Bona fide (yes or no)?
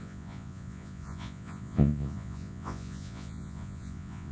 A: no